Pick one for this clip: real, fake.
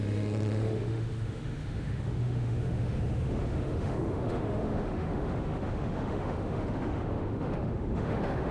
fake